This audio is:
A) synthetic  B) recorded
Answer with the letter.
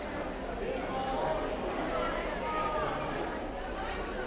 B